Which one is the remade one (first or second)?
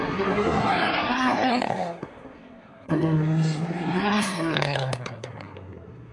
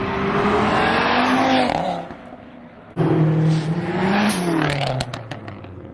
first